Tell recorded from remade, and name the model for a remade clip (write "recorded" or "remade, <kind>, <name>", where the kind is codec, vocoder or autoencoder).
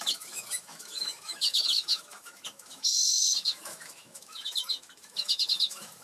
remade, autoencoder, DAC-VAE